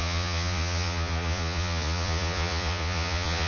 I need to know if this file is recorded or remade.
remade